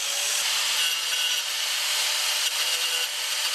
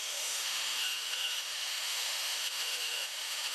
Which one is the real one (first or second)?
first